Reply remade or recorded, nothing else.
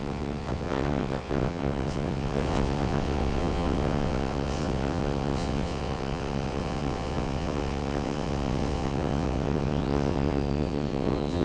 remade